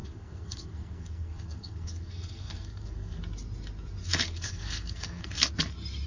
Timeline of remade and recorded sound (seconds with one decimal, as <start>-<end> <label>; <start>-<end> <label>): 0.0-3.2 remade; 3.2-4.0 recorded; 4.0-5.5 remade; 5.5-6.1 recorded